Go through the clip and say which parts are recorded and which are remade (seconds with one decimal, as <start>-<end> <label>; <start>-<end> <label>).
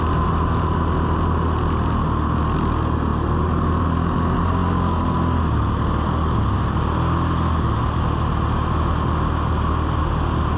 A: 0.0-10.6 recorded